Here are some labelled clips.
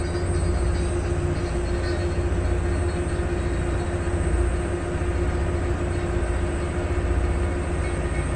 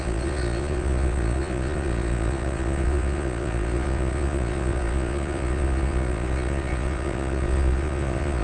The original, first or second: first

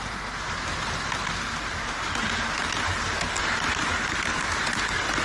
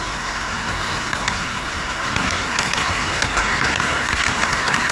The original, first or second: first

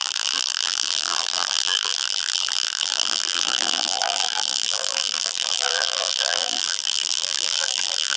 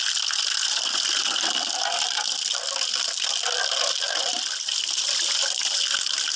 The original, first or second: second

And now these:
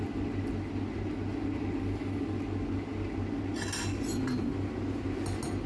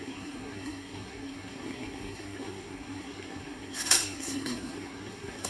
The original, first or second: first